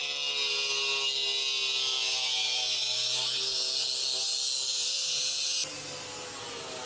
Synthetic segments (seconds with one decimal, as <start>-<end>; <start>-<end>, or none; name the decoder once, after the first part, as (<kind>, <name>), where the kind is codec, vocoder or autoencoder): 4.7-5.2 (vocoder, Vocos)